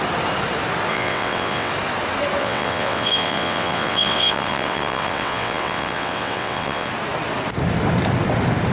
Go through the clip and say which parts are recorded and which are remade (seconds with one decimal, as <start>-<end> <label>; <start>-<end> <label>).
0.0-0.9 recorded; 0.9-1.7 remade; 1.7-2.4 recorded; 2.4-6.9 remade; 6.9-8.7 recorded